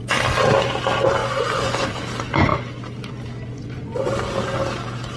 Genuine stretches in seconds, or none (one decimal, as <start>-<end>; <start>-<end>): 0.0-1.2; 2.0-3.5; 4.1-5.2